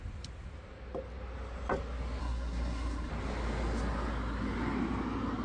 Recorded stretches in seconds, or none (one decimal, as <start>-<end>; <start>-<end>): 0.0-2.2; 3.1-5.4